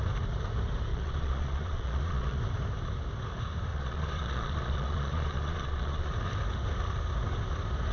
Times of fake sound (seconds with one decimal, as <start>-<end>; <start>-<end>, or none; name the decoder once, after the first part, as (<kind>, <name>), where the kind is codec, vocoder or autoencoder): 0.9-2.4 (vocoder, Vocos); 3.7-6.1